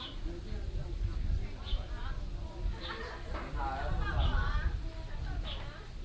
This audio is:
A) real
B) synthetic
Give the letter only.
A